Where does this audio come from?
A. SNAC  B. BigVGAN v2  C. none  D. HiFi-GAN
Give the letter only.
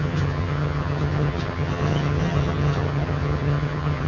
D